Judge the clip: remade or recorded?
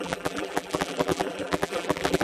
remade